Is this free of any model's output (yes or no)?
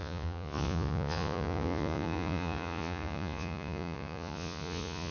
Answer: no